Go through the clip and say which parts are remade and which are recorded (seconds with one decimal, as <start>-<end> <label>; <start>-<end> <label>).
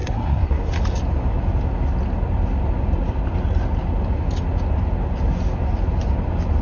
0.0-0.7 remade; 0.7-6.6 recorded